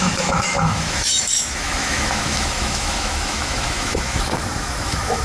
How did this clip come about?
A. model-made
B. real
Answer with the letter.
A